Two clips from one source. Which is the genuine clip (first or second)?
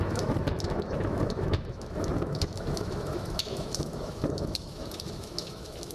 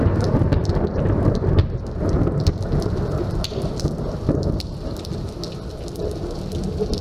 second